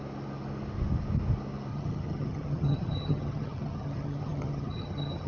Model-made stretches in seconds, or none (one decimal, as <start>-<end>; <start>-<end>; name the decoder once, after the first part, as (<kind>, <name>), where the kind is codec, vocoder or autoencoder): 1.7-5.3 (vocoder, HiFi-GAN)